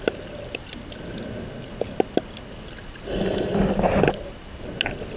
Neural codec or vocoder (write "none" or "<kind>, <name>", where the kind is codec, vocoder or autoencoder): none